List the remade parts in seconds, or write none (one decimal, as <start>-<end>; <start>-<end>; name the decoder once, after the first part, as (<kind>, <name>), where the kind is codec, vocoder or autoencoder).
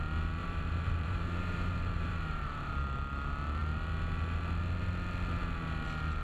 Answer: 0.4-2.7 (vocoder, BigVGAN v2)